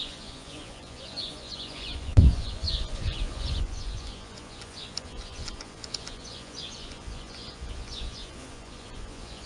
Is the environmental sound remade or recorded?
remade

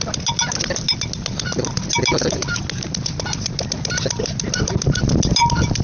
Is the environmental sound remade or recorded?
recorded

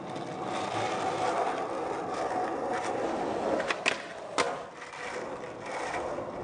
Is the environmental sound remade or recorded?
recorded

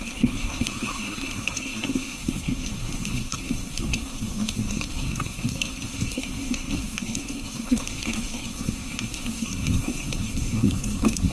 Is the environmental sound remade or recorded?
remade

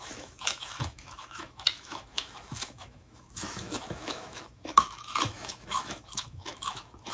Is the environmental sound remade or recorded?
remade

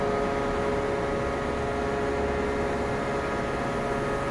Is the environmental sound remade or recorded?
recorded